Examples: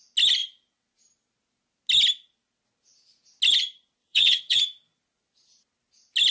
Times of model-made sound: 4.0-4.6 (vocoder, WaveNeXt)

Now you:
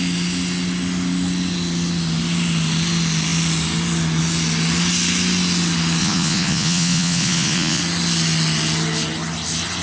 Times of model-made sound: 6.0-7.8 (vocoder, Vocos)

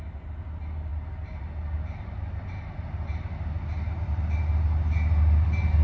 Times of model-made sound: none

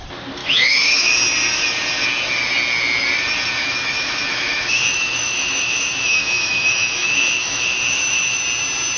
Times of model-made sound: 0.4-1.1 (autoencoder, DAC-VAE); 3.6-8.4